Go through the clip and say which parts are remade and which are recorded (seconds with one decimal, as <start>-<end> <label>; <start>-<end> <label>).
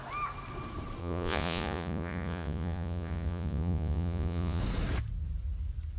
0.0-1.0 recorded; 1.0-4.6 remade; 4.6-6.0 recorded